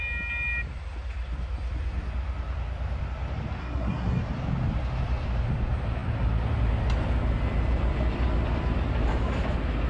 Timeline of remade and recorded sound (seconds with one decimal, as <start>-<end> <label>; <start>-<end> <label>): 0.0-3.6 recorded; 3.6-4.2 remade; 4.2-9.9 recorded